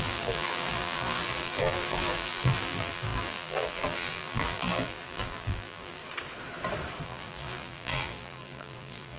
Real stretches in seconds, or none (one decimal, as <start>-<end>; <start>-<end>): 6.0-7.0